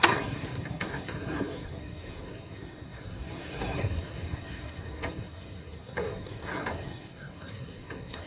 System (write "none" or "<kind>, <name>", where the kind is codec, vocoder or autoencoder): codec, SNAC